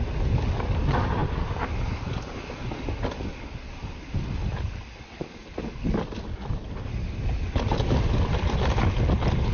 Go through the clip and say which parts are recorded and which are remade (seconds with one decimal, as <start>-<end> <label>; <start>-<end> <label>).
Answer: 0.0-9.5 recorded